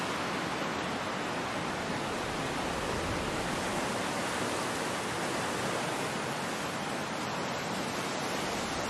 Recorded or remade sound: recorded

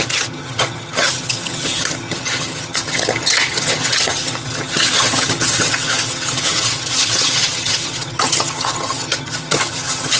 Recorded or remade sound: remade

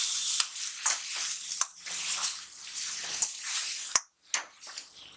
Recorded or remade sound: recorded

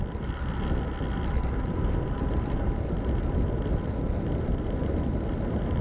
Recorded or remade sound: recorded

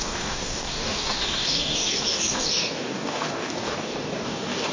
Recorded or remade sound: remade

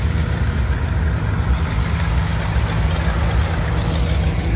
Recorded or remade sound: recorded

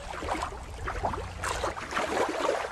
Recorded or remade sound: recorded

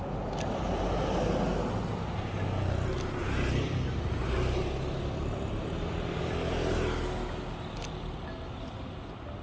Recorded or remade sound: recorded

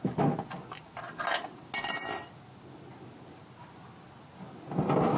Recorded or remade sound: recorded